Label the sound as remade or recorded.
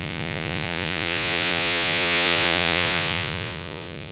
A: remade